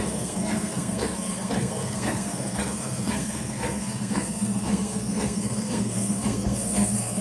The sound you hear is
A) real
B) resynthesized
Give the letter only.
B